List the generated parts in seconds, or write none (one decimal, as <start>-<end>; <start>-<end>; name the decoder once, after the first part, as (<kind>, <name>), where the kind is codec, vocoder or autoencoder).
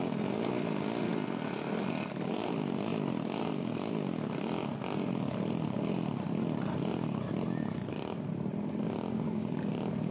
none